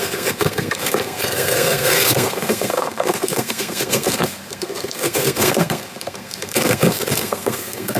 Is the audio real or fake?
fake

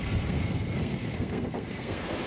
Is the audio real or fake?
fake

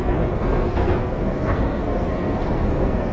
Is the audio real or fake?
fake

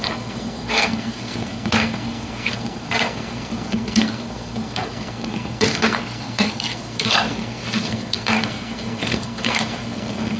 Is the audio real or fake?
fake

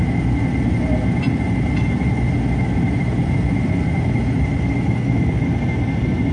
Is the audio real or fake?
real